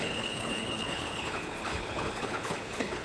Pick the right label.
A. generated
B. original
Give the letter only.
A